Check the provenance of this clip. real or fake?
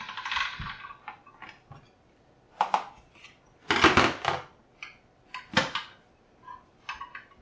real